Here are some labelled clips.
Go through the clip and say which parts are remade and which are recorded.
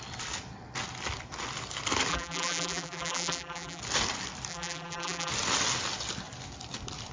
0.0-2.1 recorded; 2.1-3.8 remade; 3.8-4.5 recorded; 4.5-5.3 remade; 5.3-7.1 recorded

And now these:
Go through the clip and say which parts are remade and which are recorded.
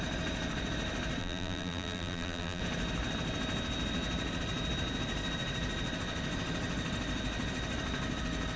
0.0-1.2 recorded; 1.2-2.6 remade; 2.6-8.6 recorded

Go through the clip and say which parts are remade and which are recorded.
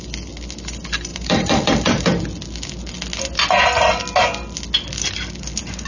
0.0-1.1 recorded; 1.1-2.1 remade; 2.1-5.9 recorded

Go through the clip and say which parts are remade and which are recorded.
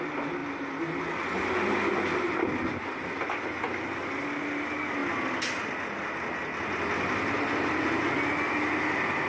0.0-9.3 recorded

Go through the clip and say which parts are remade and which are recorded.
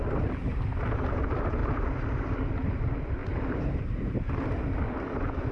0.0-1.6 recorded; 1.6-2.3 remade; 2.3-3.2 recorded; 3.2-4.3 remade; 4.3-5.5 recorded